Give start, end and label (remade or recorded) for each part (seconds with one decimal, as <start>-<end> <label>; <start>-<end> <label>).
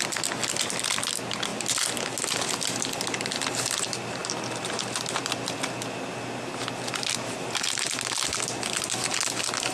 0.0-9.7 recorded